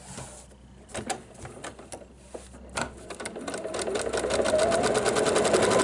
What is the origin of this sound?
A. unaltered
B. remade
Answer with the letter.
A